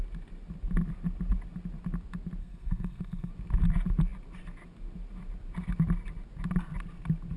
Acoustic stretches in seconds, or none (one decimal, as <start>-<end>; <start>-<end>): 0.0-2.4; 3.3-7.4

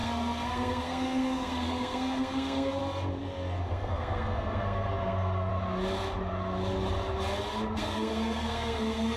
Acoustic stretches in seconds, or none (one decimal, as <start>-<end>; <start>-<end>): 2.8-3.7; 5.5-7.7

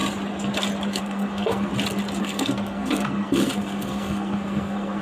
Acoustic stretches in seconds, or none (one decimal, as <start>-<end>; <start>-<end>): 0.0-1.0; 1.7-2.2

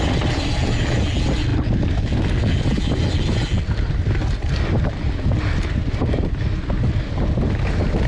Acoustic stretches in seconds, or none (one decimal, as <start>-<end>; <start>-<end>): 0.0-8.1

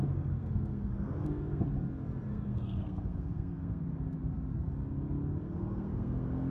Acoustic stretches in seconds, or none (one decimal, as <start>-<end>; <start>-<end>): 1.6-2.3; 4.0-5.4